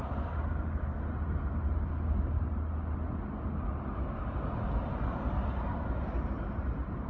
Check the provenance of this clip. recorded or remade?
recorded